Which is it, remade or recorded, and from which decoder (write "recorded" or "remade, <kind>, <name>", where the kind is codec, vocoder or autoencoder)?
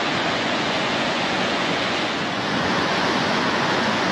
remade, vocoder, Vocos